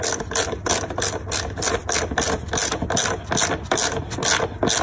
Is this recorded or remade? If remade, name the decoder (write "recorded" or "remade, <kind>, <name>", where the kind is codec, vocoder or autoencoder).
recorded